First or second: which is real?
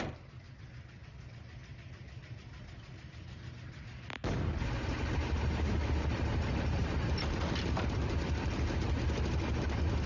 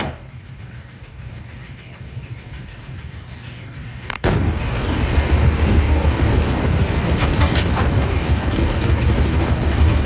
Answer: first